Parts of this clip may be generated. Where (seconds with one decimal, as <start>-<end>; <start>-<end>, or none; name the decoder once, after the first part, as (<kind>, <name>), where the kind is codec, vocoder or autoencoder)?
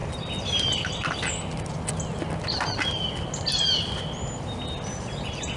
none